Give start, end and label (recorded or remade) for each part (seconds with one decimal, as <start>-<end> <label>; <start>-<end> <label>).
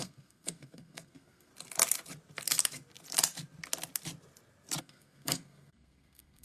0.0-1.5 remade; 1.5-4.8 recorded; 4.8-6.4 remade